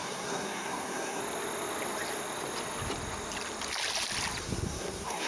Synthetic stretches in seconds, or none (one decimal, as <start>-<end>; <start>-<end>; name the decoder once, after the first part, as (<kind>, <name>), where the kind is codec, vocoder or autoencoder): 0.0-1.2 (codec, SNAC); 4.4-5.3